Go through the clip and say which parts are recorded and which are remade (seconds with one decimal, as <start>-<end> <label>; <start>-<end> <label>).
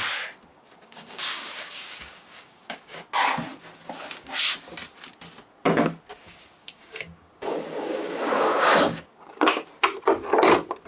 0.0-0.5 recorded; 0.5-3.0 remade; 3.0-6.1 recorded; 6.1-9.7 remade; 9.7-10.9 recorded